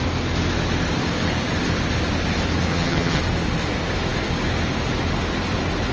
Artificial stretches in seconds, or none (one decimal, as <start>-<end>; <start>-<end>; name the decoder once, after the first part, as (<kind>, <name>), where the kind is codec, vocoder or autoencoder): 2.7-3.2 (vocoder, HiFi-GAN)